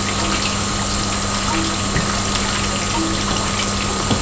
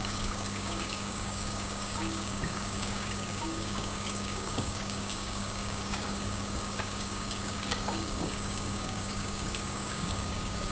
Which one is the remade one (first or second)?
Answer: second